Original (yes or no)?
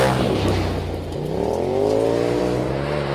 yes